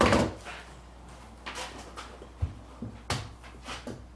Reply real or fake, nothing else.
real